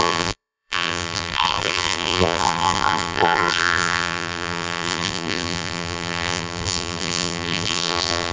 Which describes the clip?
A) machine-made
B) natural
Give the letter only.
A